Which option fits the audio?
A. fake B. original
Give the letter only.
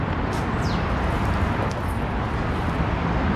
B